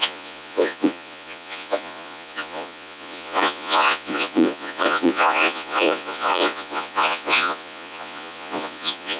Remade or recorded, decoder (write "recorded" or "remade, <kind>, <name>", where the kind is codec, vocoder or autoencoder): remade, vocoder, Vocos